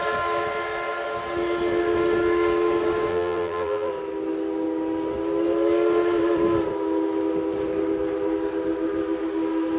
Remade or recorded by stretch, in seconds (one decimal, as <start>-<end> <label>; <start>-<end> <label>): 0.0-3.1 recorded; 3.1-3.9 remade; 3.9-9.8 recorded